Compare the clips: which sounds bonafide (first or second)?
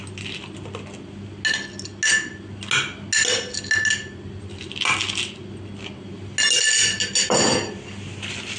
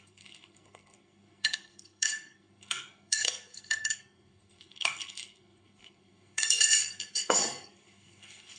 first